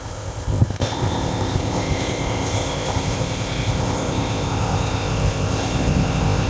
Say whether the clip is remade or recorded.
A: remade